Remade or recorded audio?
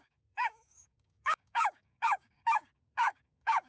remade